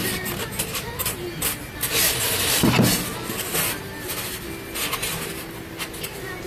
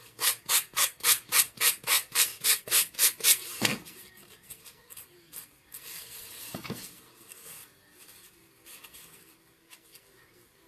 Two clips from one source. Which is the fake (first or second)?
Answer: second